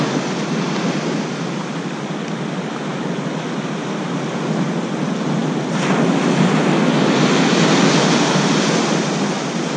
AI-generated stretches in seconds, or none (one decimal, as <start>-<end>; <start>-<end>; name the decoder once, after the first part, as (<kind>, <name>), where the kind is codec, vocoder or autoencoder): none